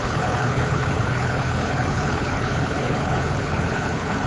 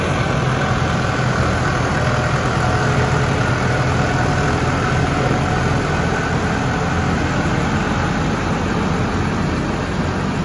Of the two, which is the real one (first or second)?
second